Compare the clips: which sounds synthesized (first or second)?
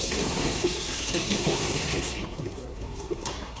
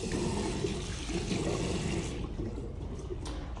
first